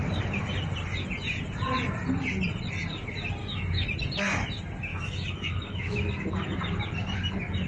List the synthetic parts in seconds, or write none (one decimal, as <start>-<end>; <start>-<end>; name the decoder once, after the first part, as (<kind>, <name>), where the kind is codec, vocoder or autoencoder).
3.4-4.0 (autoencoder, DAC-VAE); 4.9-6.1